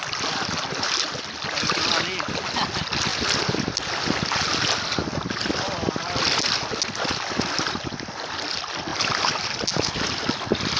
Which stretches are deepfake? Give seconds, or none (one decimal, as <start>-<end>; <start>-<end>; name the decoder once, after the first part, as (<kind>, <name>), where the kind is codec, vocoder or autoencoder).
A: none